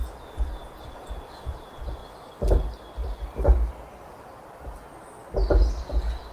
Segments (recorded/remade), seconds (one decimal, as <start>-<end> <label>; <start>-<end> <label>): 0.0-2.0 remade; 2.0-5.8 recorded; 5.8-6.3 remade